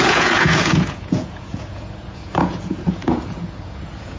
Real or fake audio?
fake